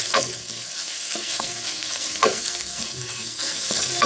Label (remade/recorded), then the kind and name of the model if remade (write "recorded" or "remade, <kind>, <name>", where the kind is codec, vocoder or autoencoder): remade, codec, SNAC